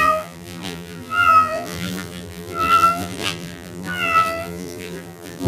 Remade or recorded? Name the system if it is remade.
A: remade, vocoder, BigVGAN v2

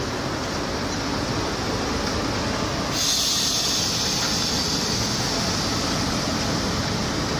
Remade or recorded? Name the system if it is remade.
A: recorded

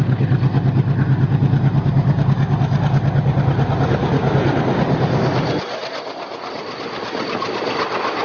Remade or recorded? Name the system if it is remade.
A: recorded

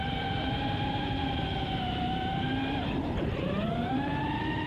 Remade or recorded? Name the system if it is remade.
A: remade, vocoder, BigVGAN v2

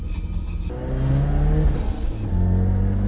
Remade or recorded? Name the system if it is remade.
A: recorded